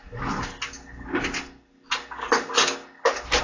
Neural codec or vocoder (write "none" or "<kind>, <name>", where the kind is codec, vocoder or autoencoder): none